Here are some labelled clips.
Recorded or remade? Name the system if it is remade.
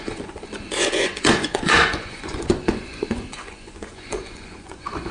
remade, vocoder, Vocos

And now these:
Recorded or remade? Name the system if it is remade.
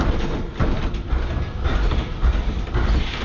recorded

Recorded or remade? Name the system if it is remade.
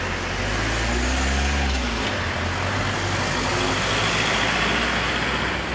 recorded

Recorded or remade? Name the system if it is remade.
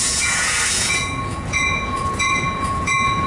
remade, vocoder, Vocos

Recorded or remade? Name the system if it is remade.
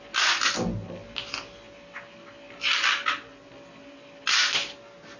recorded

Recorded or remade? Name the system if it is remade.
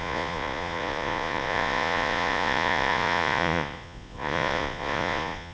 remade, vocoder, Vocos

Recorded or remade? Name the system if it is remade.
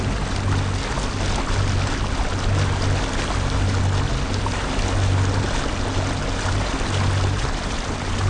recorded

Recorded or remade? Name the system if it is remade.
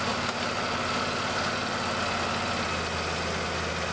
recorded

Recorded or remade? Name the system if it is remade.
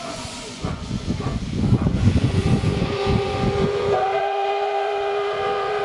remade, vocoder, Vocos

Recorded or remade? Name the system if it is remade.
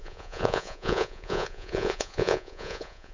remade, vocoder, Vocos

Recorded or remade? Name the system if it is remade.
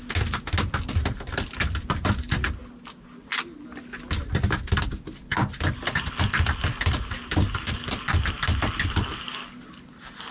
recorded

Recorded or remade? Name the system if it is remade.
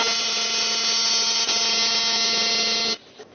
recorded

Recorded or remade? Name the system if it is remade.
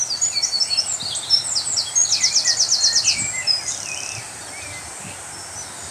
recorded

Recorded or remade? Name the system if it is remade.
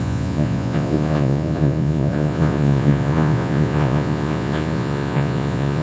remade, vocoder, Vocos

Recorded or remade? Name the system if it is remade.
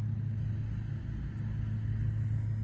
recorded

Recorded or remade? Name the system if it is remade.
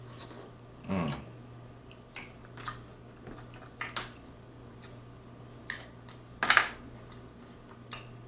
recorded